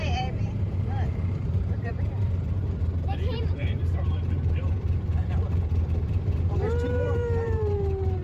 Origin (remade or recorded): remade